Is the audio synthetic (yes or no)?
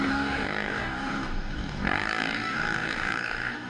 yes